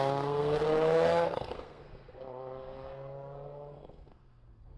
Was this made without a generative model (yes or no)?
no